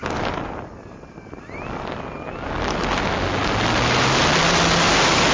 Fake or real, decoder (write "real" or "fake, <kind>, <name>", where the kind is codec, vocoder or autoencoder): real